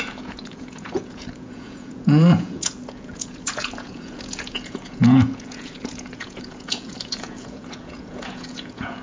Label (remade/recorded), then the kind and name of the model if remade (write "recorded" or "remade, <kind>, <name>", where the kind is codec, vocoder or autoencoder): remade, vocoder, Vocos